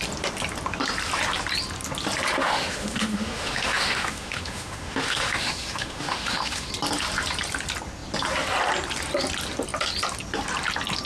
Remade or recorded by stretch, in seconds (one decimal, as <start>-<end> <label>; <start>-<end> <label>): 0.0-2.4 recorded; 2.4-6.7 remade; 6.7-11.1 recorded

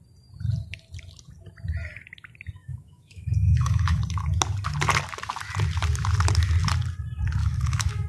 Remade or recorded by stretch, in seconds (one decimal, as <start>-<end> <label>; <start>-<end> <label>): 0.0-2.6 recorded; 2.6-4.0 remade; 4.0-7.4 recorded; 7.4-8.1 remade

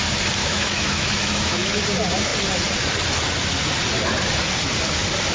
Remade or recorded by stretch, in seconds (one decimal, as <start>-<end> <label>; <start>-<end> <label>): 0.0-0.4 recorded; 0.4-1.8 remade; 1.8-5.3 recorded

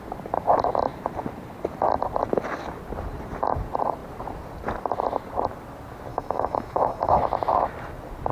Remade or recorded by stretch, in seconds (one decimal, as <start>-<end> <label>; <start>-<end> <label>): 0.0-6.1 recorded; 6.1-7.2 remade; 7.2-8.3 recorded

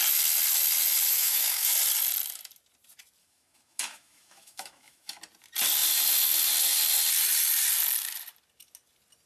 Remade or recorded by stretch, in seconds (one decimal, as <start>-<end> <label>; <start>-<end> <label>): 0.0-1.1 recorded; 1.1-1.7 remade; 1.7-3.2 recorded; 3.2-5.2 remade; 5.2-9.3 recorded